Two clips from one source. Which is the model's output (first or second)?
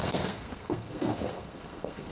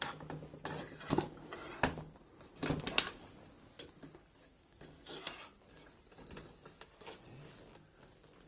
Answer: first